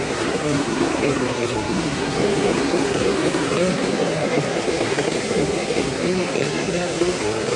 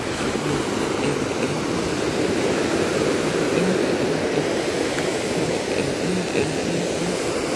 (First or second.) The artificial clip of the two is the first